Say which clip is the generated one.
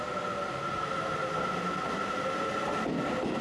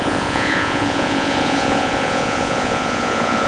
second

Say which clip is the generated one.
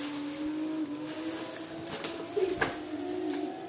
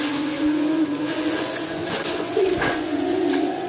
second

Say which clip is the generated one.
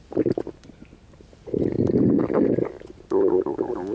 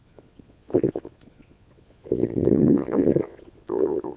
second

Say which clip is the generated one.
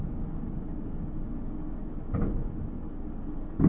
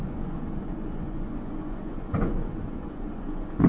second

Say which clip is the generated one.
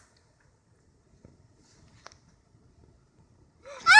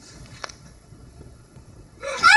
second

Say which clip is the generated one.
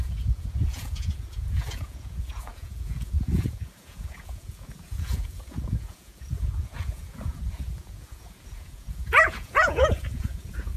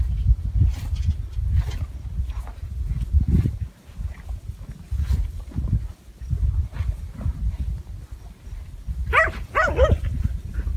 first